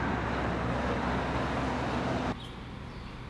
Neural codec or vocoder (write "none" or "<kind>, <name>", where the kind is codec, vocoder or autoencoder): none